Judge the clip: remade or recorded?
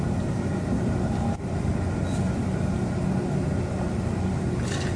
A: recorded